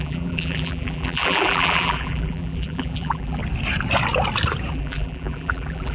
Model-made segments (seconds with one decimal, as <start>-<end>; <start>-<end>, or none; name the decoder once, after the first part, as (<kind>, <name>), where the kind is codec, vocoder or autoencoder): 0.0-3.4 (vocoder, BigVGAN v2); 4.7-5.9